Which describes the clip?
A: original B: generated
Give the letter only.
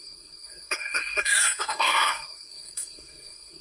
B